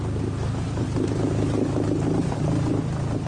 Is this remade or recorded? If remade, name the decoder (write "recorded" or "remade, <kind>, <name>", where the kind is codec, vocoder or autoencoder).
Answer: recorded